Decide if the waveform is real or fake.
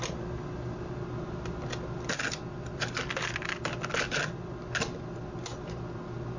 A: real